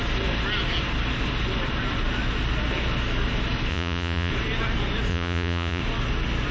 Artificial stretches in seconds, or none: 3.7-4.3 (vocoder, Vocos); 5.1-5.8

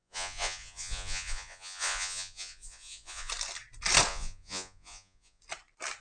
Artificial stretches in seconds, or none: 0.0-3.3 (vocoder, Vocos); 4.1-5.4

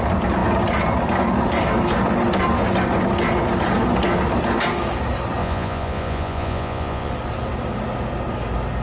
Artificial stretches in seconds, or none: 5.4-7.1 (vocoder, Vocos)

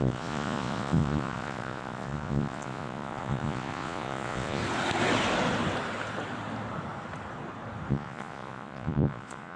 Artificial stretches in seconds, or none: 0.0-4.6 (vocoder, Vocos); 7.9-9.6

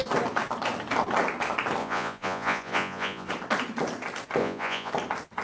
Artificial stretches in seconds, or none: 1.8-3.3 (vocoder, Vocos); 4.4-4.9

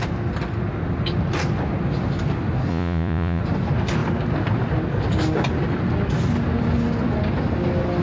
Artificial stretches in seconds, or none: 2.7-3.4 (vocoder, Vocos)

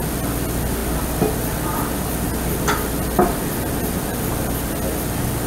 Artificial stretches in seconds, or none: none